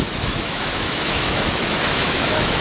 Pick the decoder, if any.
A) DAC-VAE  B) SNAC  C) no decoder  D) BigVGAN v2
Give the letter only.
A